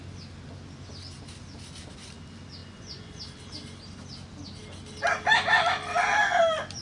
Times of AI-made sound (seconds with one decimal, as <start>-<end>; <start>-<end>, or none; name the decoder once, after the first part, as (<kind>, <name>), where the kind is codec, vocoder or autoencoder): 2.6-3.2 (vocoder, Vocos)